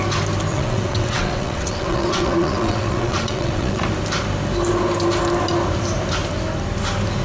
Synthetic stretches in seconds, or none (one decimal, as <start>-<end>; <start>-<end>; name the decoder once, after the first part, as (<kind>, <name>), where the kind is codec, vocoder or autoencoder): 0.5-3.8 (vocoder, WaveNeXt)

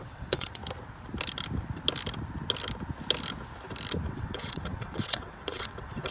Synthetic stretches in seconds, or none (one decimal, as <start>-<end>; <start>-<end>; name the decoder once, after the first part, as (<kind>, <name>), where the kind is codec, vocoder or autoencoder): 0.0-0.6 (vocoder, WaveNeXt); 4.1-6.1

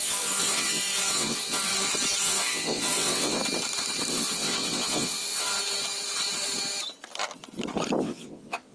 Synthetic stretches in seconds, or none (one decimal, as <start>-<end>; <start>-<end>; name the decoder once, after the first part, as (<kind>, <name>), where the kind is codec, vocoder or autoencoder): 0.0-1.7 (vocoder, WaveNeXt); 2.2-3.4; 4.1-5.5; 8.0-8.7

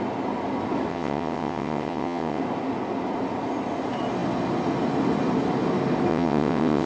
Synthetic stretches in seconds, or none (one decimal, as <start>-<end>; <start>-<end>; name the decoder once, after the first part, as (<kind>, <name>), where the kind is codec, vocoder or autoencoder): 0.9-2.4 (vocoder, WaveNeXt); 6.1-6.9